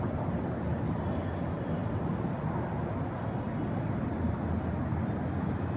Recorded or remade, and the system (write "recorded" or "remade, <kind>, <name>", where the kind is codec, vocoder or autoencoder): recorded